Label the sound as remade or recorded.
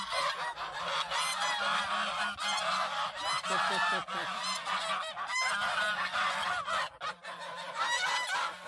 recorded